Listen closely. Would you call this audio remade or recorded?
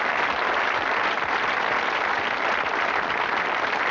recorded